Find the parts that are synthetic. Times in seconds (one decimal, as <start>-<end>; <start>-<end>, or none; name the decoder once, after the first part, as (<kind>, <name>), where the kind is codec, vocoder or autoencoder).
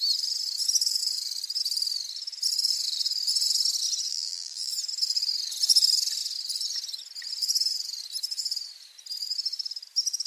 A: 4.1-4.7 (vocoder, BigVGAN v2)